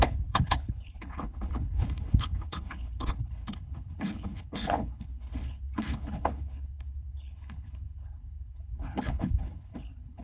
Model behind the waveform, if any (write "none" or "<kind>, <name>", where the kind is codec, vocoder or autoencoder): codec, HILCodec